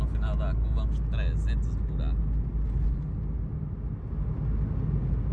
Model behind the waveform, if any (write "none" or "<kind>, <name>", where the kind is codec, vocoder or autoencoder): none